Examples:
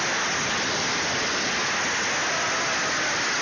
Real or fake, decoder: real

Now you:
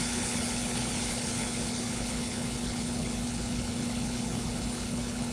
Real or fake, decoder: fake, codec, HILCodec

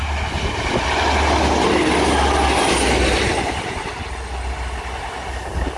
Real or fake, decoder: real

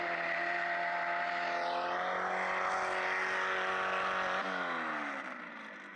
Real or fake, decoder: real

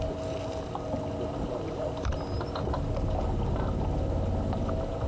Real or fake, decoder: real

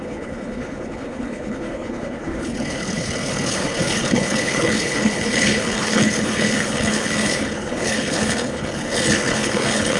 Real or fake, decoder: fake, codec, HILCodec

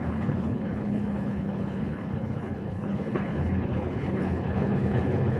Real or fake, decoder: fake, codec, HILCodec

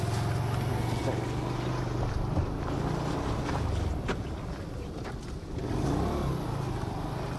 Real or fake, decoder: real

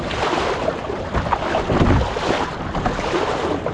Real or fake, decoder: real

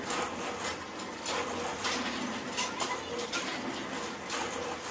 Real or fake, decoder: real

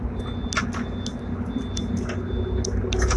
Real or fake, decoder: real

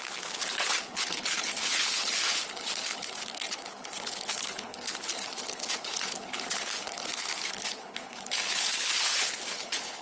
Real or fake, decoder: fake, codec, HILCodec